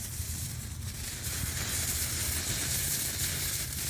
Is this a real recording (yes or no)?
no